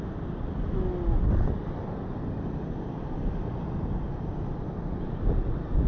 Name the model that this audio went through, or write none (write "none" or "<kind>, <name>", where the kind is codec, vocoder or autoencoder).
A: none